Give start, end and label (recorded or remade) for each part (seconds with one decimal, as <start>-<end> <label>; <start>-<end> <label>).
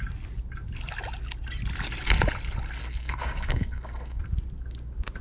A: 0.0-2.8 recorded; 2.8-4.2 remade; 4.2-5.2 recorded